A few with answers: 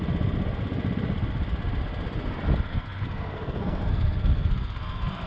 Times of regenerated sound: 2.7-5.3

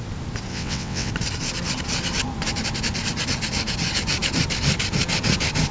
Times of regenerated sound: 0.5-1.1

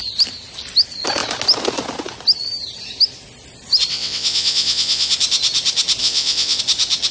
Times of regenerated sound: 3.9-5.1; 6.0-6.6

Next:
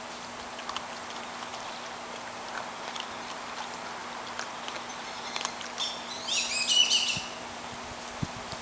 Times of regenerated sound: none

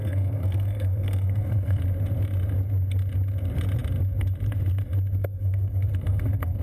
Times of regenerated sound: 0.0-1.8; 5.2-6.6

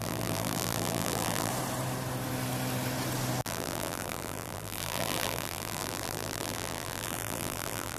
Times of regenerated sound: 0.0-1.5; 3.4-8.0

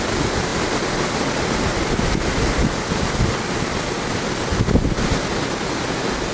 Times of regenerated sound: none